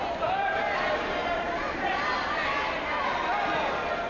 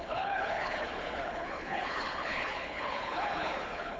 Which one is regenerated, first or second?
second